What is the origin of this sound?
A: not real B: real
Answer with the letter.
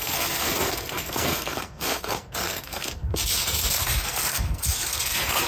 A